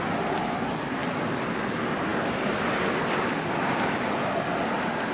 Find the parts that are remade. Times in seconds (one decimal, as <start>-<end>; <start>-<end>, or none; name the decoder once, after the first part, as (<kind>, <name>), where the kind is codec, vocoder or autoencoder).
none